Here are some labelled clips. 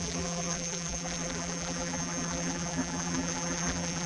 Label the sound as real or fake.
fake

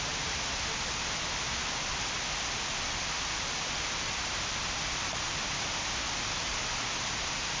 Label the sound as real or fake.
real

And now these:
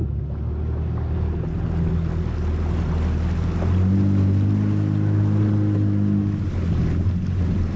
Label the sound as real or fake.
real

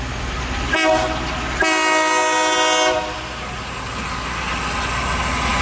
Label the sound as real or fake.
real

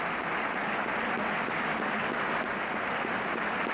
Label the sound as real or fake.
real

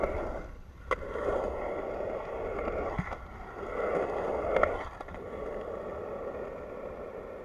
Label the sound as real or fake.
real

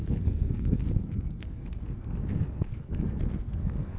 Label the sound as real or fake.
fake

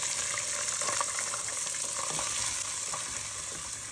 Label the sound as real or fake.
real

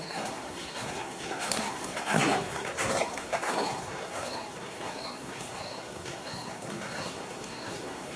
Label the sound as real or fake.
fake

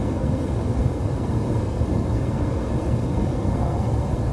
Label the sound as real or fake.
fake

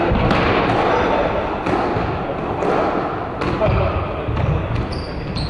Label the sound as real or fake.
real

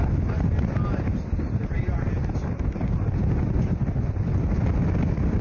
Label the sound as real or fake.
real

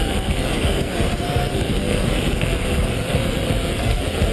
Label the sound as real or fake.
fake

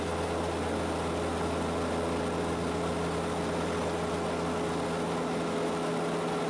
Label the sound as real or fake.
real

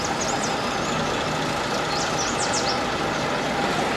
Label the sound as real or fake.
real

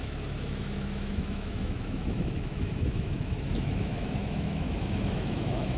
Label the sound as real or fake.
fake